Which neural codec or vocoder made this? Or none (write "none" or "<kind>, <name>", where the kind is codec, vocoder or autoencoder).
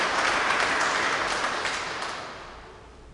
none